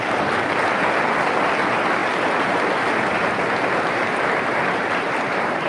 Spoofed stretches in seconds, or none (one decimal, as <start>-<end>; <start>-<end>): 2.0-5.7